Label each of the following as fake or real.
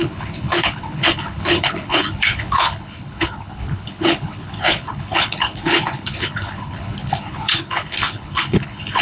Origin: fake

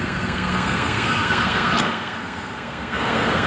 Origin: fake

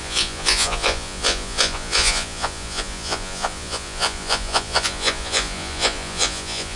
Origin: fake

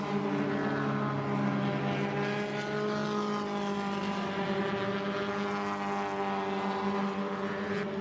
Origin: real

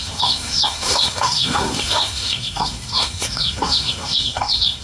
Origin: fake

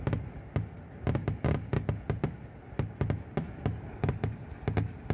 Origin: real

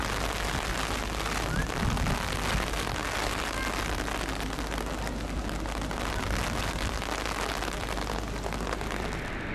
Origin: real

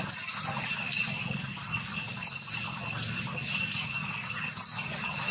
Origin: real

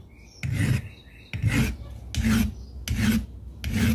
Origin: real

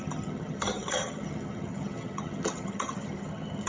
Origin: fake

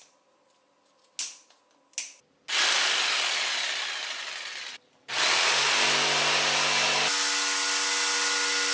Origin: real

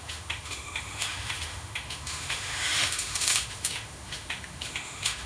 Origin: fake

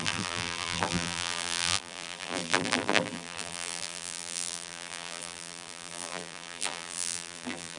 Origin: fake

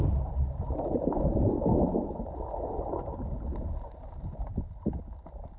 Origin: real